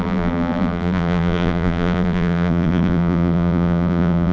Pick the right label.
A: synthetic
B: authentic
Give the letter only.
A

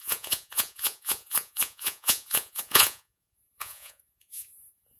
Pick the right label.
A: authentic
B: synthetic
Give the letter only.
B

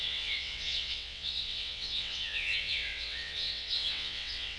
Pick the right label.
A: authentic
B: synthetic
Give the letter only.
B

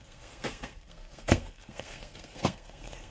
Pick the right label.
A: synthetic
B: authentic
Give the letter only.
A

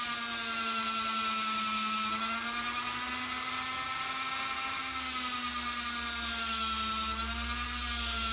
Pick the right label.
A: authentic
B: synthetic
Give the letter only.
A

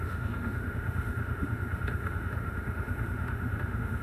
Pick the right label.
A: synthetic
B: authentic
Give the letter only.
A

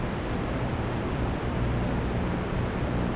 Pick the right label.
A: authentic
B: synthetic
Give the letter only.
A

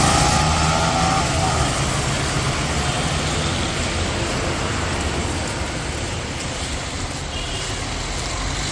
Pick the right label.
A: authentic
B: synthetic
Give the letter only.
A